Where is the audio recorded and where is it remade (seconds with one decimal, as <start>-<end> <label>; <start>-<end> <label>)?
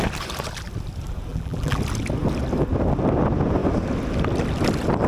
0.0-1.3 recorded; 1.3-1.8 remade; 1.8-5.1 recorded